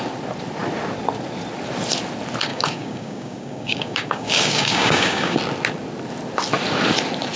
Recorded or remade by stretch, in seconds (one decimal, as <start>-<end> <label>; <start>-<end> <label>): 0.0-2.5 recorded; 2.5-5.4 remade; 5.4-7.4 recorded